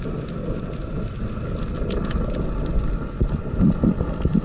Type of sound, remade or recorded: recorded